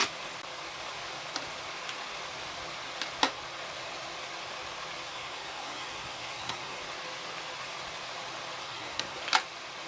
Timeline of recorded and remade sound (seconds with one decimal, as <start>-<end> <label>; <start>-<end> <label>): 0.0-5.1 recorded; 5.1-6.8 remade; 6.8-8.6 recorded; 8.6-9.2 remade; 9.2-9.9 recorded